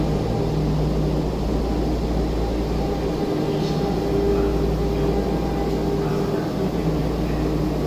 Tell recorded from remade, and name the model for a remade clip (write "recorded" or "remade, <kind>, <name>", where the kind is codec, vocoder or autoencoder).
recorded